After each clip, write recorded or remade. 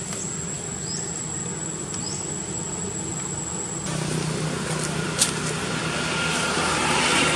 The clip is recorded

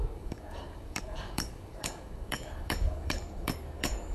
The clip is remade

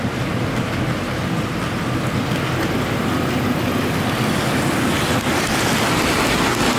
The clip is recorded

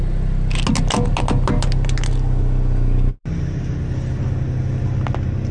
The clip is recorded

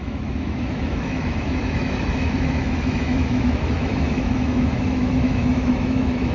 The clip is remade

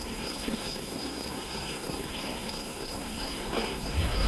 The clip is remade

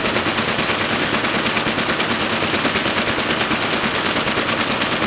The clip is recorded